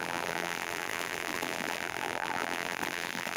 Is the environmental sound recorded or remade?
remade